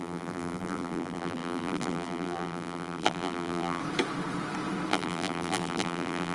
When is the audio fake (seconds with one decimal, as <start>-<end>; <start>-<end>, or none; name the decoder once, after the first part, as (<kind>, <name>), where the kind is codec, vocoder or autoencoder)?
0.0-3.8 (vocoder, BigVGAN v2); 4.9-6.3